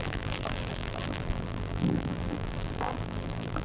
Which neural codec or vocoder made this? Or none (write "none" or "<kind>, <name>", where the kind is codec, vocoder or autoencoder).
vocoder, BigVGAN v2